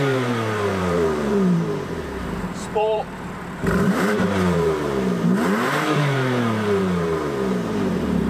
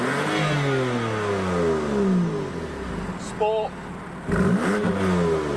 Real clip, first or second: second